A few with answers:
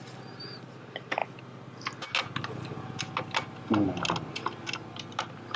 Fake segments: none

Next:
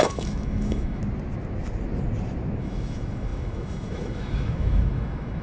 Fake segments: 0.0-1.0 (autoencoder, DAC-VAE); 2.6-5.4

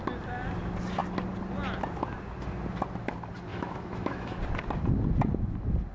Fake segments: 3.5-4.4 (autoencoder, DAC-VAE)

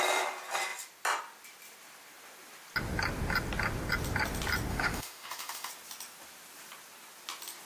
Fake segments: 4.7-5.7 (autoencoder, DAC-VAE)

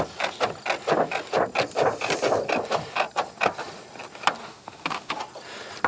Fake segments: 4.4-5.2 (autoencoder, DAC-VAE)